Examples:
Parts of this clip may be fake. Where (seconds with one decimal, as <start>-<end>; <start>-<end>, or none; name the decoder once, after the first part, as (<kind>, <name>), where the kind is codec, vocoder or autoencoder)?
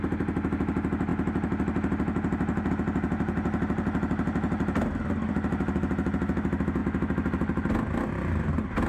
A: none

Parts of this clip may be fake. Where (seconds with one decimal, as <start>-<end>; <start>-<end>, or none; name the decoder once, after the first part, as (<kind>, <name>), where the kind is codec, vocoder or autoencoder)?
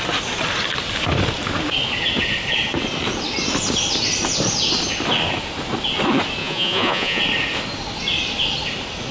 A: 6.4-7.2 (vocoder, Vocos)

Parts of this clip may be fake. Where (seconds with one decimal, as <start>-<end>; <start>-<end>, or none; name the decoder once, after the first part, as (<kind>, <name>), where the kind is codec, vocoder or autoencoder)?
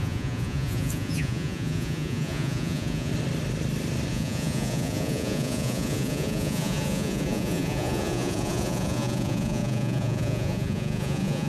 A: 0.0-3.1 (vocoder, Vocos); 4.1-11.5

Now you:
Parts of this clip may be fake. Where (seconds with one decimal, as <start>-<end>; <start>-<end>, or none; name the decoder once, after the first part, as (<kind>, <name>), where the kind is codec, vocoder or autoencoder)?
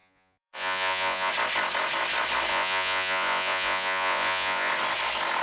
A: 0.0-1.3 (vocoder, Vocos); 2.5-4.7